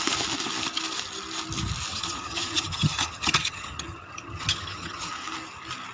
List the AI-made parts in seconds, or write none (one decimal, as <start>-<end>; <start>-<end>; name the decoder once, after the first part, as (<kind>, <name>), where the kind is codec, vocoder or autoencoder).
1.9-5.1 (vocoder, HiFi-GAN)